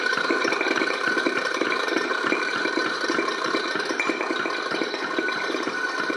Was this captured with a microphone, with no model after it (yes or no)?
no